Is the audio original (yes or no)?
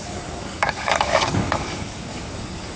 no